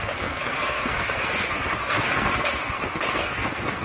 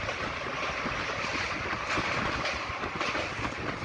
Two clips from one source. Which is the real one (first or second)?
second